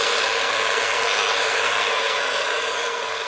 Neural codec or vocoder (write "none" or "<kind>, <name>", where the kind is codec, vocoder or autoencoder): codec, SNAC